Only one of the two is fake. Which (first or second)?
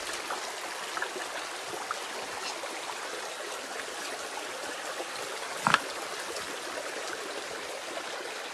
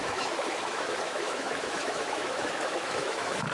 second